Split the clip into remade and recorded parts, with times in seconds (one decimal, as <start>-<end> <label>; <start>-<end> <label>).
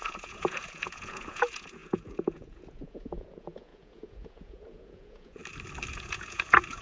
0.0-5.4 remade; 5.4-5.9 recorded; 5.9-6.8 remade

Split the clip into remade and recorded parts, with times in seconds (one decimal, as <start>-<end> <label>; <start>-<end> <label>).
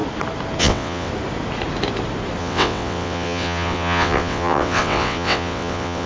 0.0-0.6 recorded; 0.6-1.1 remade; 1.1-2.4 recorded; 2.4-6.1 remade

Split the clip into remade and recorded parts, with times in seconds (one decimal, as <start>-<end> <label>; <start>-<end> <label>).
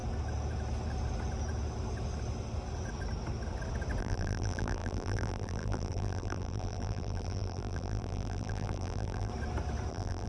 0.0-4.0 recorded; 4.0-9.3 remade; 9.3-9.9 recorded; 9.9-10.3 remade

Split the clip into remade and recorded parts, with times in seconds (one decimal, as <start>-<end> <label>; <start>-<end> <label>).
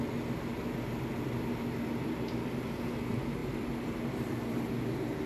0.0-3.4 recorded; 3.4-4.7 remade; 4.7-5.3 recorded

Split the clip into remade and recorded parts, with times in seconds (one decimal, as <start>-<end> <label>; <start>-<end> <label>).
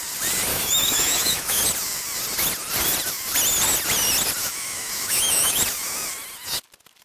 0.0-0.5 recorded; 0.5-1.6 remade; 1.6-4.4 recorded; 4.4-5.6 remade; 5.6-7.0 recorded